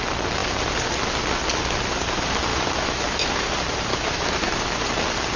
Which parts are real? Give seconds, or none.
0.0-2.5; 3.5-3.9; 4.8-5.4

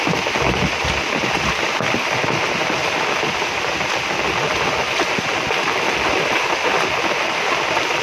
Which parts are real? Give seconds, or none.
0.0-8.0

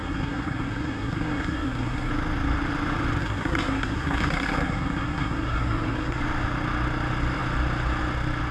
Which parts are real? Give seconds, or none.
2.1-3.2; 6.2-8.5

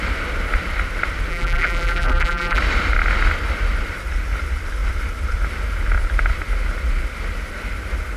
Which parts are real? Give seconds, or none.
0.0-1.3; 2.6-8.2